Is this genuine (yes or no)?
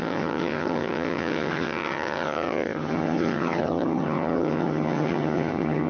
no